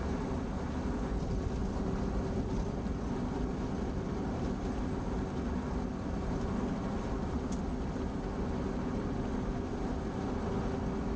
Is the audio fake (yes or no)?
no